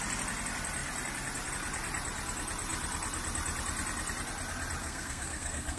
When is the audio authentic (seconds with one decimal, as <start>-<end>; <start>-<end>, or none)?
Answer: 0.0-4.8